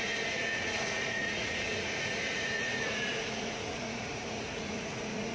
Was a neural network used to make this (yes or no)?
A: yes